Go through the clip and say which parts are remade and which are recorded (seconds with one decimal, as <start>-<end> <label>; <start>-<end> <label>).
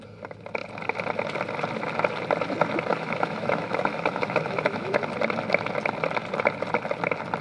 0.0-2.9 recorded; 2.9-5.0 remade; 5.0-7.4 recorded